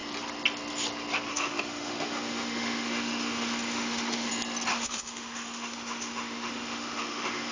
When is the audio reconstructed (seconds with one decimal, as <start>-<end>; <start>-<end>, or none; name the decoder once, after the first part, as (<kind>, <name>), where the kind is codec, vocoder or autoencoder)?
1.3-4.3 (autoencoder, DAC-VAE); 4.7-7.5